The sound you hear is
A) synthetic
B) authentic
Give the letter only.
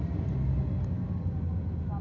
B